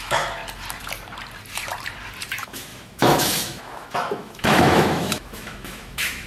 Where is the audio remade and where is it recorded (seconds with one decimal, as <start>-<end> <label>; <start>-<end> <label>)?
0.0-0.4 remade; 0.4-2.3 recorded; 2.3-6.3 remade